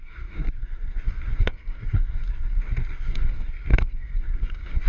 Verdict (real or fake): fake